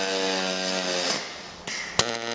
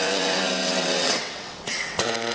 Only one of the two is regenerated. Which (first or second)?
second